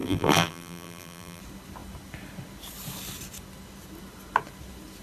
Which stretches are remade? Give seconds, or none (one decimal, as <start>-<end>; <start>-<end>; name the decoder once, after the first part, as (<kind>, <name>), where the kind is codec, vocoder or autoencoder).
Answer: 0.0-1.4 (vocoder, BigVGAN v2)

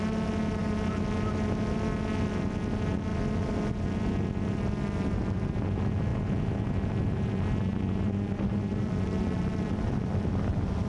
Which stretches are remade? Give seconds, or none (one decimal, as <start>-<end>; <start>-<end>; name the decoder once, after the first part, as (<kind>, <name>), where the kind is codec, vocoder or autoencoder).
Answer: none

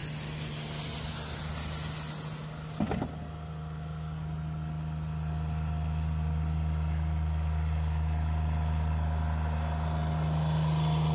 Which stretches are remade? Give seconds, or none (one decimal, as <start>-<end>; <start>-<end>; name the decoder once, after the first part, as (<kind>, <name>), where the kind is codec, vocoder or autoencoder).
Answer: none

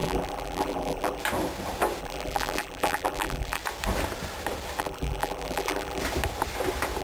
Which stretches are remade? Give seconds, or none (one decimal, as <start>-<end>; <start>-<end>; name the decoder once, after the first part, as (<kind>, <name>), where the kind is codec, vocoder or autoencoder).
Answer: 0.0-1.2 (vocoder, BigVGAN v2); 2.0-3.6; 4.8-6.0